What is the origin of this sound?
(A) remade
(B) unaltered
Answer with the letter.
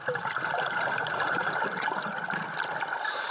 B